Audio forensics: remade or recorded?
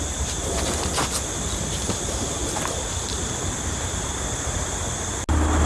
recorded